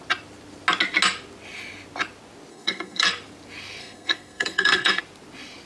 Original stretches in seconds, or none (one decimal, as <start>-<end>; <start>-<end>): 0.0-2.5; 3.1-3.8; 5.0-5.7